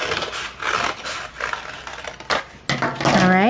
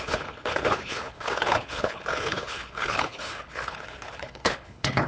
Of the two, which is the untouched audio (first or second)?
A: first